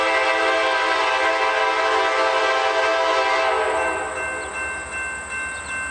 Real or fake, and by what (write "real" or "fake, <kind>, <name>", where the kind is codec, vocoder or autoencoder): real